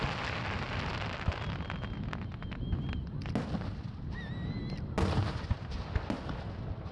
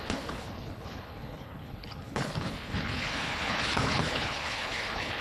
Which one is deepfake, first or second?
second